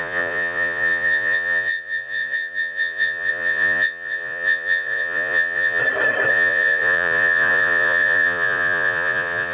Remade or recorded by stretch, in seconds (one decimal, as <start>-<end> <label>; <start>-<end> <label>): 0.0-5.8 remade; 5.8-6.3 recorded; 6.3-9.5 remade